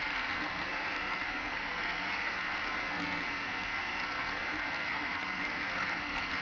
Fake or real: fake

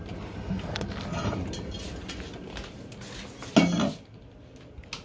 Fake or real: real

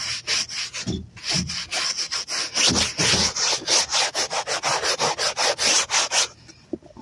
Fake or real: real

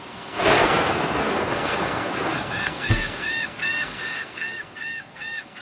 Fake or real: fake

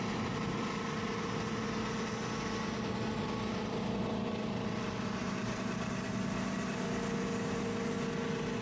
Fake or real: real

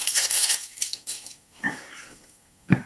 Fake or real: fake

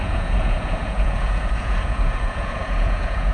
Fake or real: fake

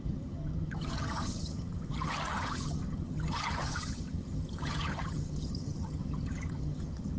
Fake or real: fake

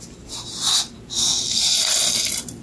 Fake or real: real